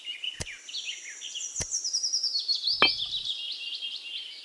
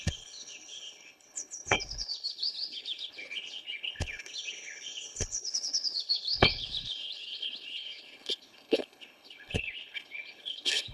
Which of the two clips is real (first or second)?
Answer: first